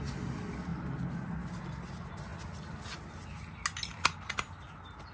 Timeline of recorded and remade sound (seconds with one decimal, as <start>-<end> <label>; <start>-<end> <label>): 0.0-5.1 recorded